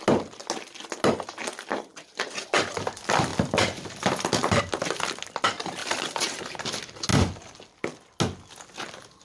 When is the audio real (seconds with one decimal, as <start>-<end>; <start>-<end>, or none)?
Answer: 0.0-1.9; 2.5-3.3; 4.6-5.8; 6.4-9.2